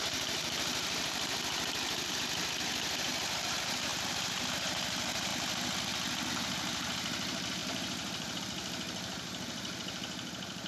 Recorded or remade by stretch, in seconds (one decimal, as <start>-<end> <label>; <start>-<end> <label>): 0.0-5.3 remade; 5.3-6.3 recorded; 6.3-10.7 remade